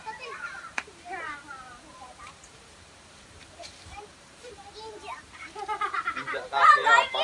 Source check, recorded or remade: remade